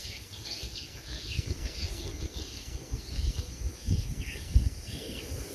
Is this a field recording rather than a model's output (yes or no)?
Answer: no